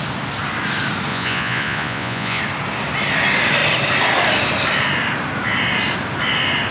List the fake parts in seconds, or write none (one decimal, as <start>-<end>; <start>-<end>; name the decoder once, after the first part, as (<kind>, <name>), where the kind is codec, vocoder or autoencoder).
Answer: 1.1-2.4 (vocoder, Vocos)